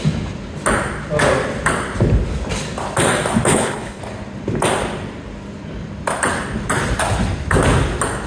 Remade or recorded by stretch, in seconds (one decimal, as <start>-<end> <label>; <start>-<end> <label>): 0.0-3.5 recorded; 3.5-4.0 remade; 4.0-8.3 recorded